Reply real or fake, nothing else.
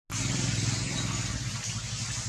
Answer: real